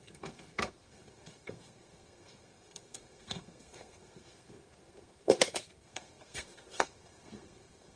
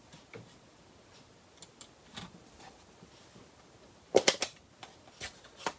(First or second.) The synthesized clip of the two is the first